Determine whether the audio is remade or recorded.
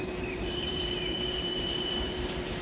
remade